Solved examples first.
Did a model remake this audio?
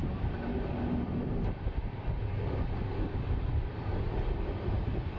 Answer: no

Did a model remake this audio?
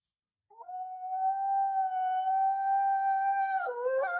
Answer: yes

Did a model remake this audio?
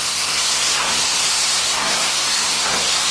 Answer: yes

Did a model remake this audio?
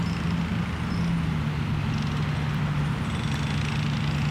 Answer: no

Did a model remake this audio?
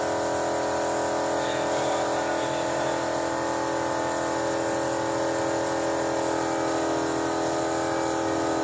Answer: no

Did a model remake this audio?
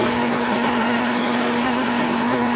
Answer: yes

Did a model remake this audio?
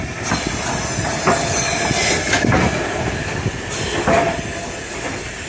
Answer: no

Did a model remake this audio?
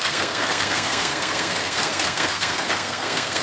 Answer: yes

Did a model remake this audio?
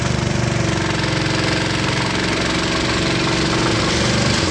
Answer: no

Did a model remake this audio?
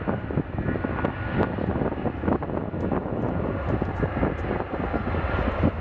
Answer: no